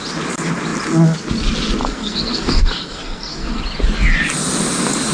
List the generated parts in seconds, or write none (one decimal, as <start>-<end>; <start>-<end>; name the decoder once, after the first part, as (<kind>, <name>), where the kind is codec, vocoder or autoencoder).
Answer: 1.8-3.6 (codec, SNAC)